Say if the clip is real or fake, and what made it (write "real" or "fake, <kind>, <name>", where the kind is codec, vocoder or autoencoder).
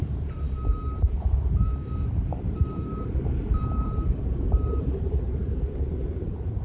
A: fake, vocoder, BigVGAN v2